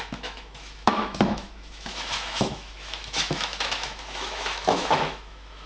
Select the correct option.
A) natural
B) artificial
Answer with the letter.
B